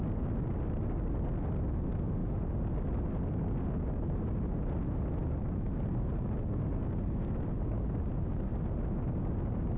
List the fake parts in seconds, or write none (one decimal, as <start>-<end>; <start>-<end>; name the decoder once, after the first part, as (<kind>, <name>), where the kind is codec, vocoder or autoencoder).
none